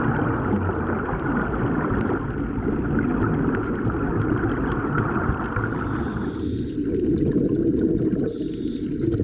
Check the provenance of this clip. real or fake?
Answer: real